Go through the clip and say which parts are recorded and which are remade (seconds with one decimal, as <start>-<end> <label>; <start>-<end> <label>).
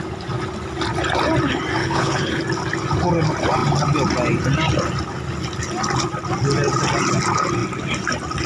0.0-1.8 recorded; 1.8-2.4 remade; 2.4-8.5 recorded